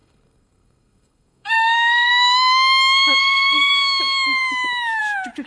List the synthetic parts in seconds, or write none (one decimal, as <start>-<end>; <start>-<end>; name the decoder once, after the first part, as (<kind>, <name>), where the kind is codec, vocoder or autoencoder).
0.0-2.1 (codec, SNAC); 3.2-3.7